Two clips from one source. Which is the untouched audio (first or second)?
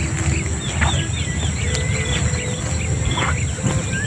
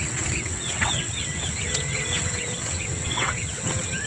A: first